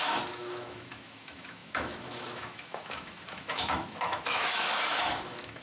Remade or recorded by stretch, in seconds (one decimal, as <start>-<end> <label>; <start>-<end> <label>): 0.0-5.6 remade